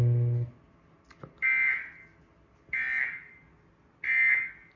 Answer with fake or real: real